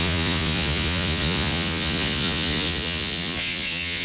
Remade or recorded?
remade